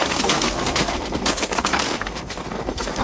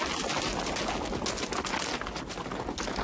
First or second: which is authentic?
second